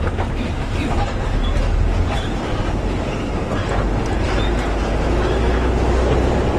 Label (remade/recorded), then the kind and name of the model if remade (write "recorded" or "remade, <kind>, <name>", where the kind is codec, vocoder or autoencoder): recorded